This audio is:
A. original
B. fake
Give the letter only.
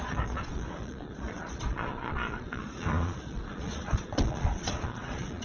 B